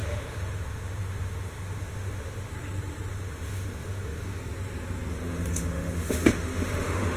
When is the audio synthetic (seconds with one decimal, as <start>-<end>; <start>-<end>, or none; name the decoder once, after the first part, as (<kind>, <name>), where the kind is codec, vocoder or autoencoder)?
0.0-2.5 (autoencoder, DAC-VAE); 3.1-4.4; 5.1-7.2